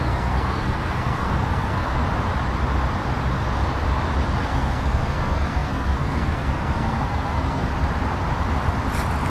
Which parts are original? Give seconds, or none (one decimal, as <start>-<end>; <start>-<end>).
2.0-4.4; 7.7-9.3